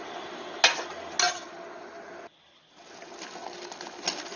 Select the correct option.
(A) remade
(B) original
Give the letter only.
B